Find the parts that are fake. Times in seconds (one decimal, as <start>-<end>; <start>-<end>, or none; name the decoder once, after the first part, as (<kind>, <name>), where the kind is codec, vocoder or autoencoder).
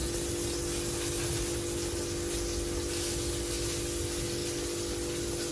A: none